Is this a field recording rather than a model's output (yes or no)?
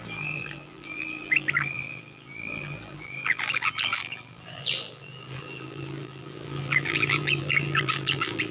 no